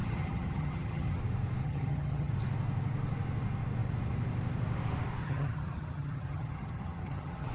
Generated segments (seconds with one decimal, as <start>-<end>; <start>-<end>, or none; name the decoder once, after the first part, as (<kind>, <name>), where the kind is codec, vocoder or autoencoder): 0.0-1.2 (vocoder, HiFi-GAN); 1.6-2.3; 5.2-7.5